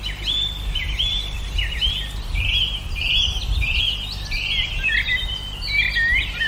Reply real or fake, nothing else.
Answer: real